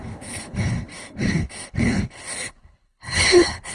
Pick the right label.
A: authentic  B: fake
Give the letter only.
B